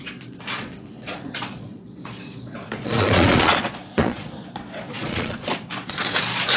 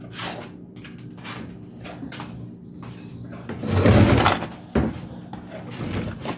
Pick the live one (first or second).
second